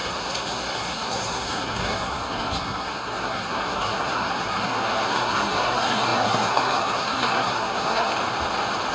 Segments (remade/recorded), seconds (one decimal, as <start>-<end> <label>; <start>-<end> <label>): 0.0-8.1 remade; 8.1-8.9 recorded